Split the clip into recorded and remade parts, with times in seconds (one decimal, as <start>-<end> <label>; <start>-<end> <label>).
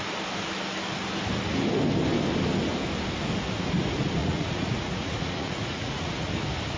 0.0-4.2 recorded; 4.2-6.3 remade; 6.3-6.8 recorded